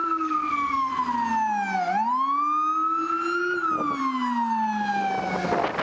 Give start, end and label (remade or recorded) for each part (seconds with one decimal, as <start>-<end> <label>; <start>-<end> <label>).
0.0-0.9 remade; 0.9-5.8 recorded